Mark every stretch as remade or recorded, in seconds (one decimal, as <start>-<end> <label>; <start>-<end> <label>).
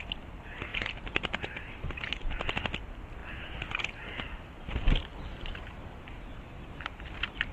0.0-0.7 recorded; 0.7-2.2 remade; 2.2-3.2 recorded; 3.2-6.0 remade; 6.0-7.5 recorded